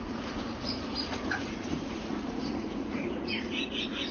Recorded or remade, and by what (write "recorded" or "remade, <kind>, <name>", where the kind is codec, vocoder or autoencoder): remade, vocoder, Vocos